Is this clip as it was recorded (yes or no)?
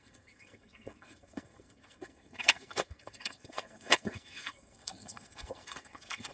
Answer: no